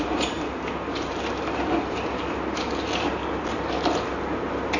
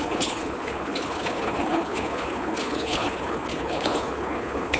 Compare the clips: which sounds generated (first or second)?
second